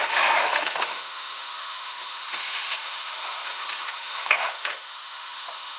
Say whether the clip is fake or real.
fake